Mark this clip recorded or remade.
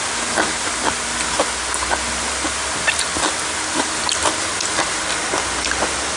recorded